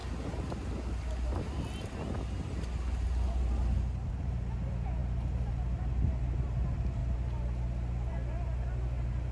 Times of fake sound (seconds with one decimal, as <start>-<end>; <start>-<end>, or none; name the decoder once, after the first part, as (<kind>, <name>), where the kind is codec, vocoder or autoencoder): none